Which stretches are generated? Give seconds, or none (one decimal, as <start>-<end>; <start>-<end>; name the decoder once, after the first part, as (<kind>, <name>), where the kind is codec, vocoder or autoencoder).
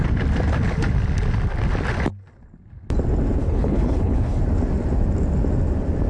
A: 3.4-4.4 (codec, HILCodec)